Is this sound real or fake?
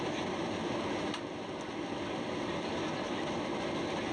real